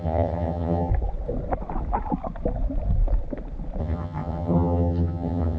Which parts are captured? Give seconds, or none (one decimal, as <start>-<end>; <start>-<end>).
0.9-3.8